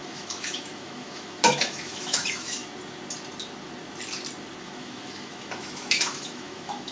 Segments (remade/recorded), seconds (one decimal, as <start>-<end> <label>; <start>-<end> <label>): 0.0-2.6 remade; 2.6-4.6 recorded; 4.6-6.9 remade